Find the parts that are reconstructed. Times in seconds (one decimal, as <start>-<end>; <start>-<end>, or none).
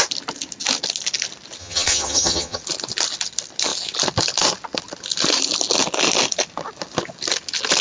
1.6-2.6